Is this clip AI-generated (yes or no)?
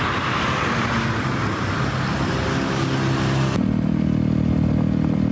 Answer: no